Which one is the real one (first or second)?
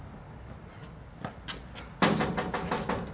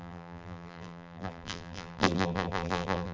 first